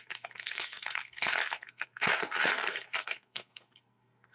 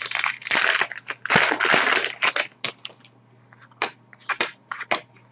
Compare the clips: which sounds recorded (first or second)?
second